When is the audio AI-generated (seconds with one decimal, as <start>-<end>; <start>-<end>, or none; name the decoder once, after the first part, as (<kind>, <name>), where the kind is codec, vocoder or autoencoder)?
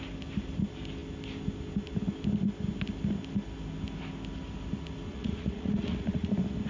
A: 5.1-6.3 (vocoder, Vocos)